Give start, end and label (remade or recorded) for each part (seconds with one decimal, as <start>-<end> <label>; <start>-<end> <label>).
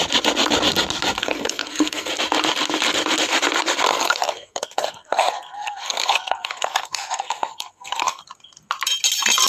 0.0-1.2 recorded; 1.2-2.1 remade; 2.1-3.9 recorded; 3.9-8.2 remade; 8.2-9.5 recorded